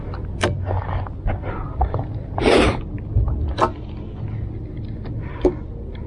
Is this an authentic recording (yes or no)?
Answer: yes